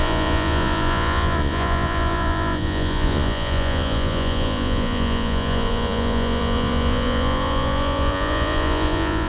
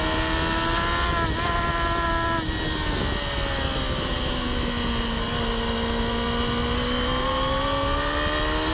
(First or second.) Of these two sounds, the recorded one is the second